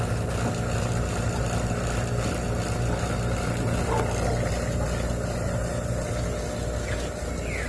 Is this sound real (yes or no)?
yes